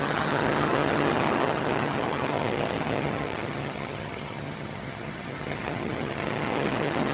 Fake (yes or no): yes